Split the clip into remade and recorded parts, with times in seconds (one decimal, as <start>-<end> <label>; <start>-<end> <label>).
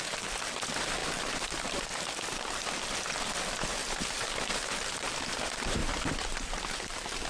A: 0.0-1.0 recorded; 1.0-1.8 remade; 1.8-3.8 recorded; 3.8-4.3 remade; 4.3-5.8 recorded; 5.8-7.3 remade